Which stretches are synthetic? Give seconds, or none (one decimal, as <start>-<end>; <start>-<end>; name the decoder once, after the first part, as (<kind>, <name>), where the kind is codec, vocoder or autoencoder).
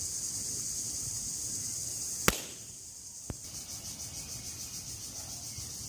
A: none